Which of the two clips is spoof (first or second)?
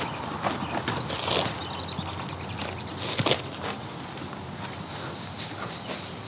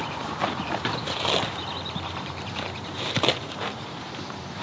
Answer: second